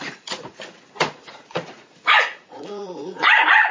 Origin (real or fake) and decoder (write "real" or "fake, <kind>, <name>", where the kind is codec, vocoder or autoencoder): fake, vocoder, Vocos